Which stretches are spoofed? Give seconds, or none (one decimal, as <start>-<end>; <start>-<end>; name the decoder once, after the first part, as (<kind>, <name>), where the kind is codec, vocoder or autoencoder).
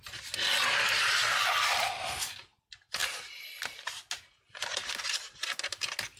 3.0-3.5 (vocoder, BigVGAN v2)